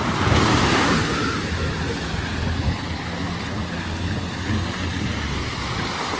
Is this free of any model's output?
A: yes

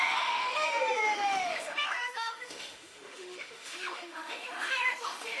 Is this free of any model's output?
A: no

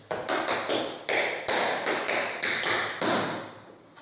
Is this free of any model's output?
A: yes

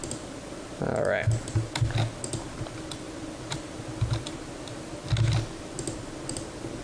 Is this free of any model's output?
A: yes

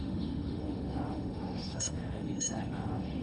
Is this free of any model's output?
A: no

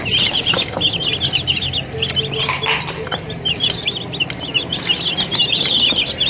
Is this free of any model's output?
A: yes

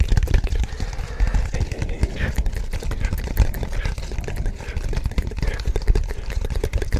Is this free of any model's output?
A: yes